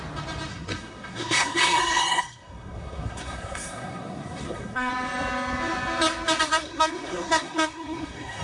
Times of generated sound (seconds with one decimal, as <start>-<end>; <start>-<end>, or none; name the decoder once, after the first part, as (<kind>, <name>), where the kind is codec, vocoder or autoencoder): 0.5-4.9 (codec, SNAC); 6.4-8.4